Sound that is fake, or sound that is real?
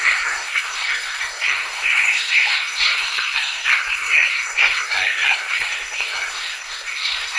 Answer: fake